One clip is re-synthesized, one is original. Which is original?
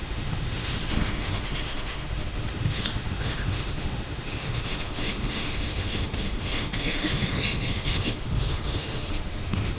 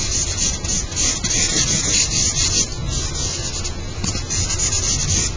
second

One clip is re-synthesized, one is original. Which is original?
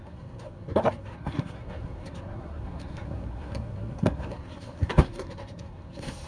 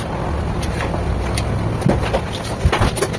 second